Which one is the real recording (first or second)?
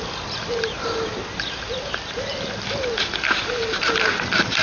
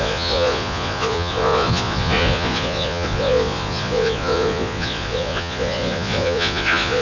first